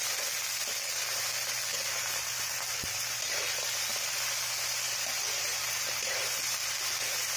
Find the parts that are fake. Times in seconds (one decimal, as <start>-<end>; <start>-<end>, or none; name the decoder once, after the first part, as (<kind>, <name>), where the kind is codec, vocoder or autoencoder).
none